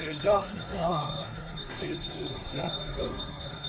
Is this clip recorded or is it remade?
remade